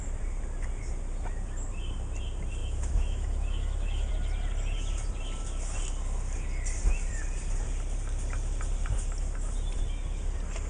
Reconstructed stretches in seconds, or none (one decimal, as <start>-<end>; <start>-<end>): 2.6-4.1